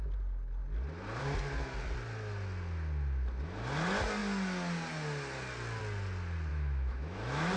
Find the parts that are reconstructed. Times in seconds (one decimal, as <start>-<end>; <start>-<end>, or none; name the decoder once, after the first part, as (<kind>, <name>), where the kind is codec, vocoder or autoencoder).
6.5-7.6 (autoencoder, DAC-VAE)